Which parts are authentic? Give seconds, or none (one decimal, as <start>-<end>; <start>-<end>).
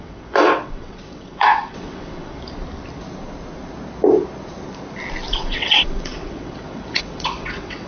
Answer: 2.4-5.3